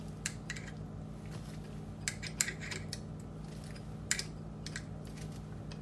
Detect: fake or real real